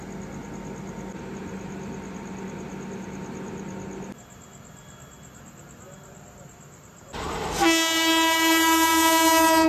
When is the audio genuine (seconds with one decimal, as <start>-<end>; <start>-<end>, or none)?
0.0-9.7